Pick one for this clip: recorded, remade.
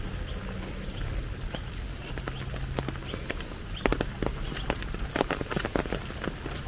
recorded